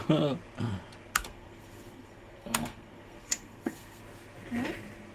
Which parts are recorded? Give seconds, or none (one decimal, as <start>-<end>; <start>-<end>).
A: 0.0-1.1; 4.0-5.1